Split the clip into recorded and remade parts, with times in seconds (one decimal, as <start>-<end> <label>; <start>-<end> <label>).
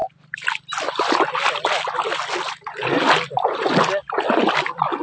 0.0-5.0 recorded